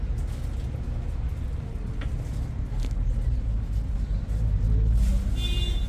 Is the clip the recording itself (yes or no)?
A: yes